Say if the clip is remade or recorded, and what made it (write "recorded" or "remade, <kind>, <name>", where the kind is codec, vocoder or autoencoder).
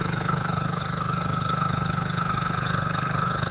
remade, codec, HILCodec